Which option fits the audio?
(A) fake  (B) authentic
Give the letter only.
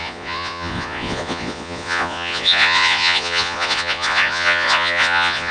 A